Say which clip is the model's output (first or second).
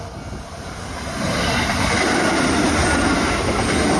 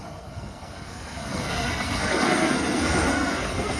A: second